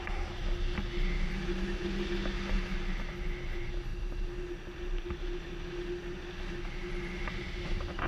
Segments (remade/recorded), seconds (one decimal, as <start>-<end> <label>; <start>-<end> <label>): 0.0-8.1 recorded

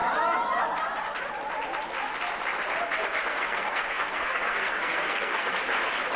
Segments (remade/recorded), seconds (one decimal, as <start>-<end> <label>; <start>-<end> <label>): 0.0-3.3 recorded; 3.3-5.6 remade; 5.6-6.2 recorded

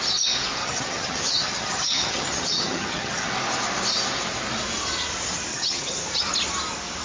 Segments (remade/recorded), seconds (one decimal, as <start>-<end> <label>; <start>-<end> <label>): 0.0-0.6 recorded; 0.6-3.3 remade; 3.3-5.5 recorded; 5.5-6.0 remade; 6.0-7.0 recorded